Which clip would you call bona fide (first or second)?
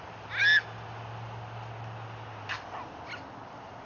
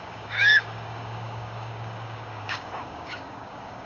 first